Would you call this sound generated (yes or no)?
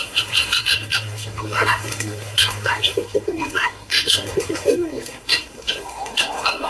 yes